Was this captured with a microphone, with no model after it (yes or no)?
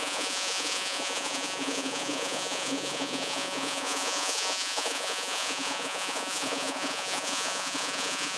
no